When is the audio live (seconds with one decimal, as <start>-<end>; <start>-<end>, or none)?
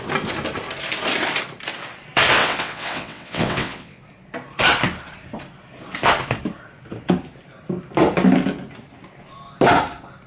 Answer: 0.0-2.4; 4.0-10.3